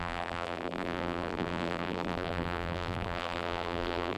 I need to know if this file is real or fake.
fake